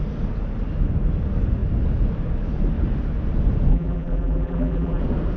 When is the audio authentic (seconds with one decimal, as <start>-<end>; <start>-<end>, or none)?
0.0-3.7; 5.0-5.4